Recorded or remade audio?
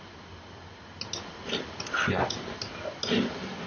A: recorded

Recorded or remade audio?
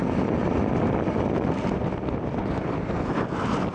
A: recorded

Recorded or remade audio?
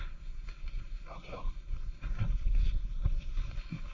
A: remade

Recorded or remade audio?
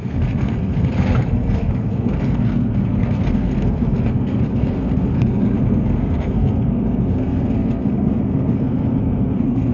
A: remade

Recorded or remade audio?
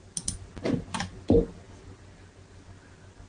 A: recorded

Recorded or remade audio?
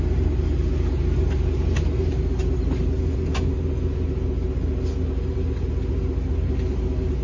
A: recorded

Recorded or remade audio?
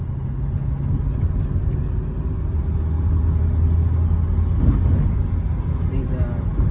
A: recorded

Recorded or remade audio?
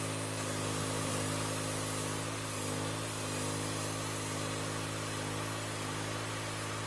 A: recorded